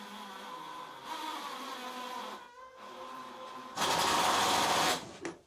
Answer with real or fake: real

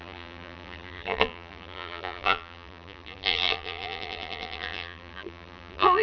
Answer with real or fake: fake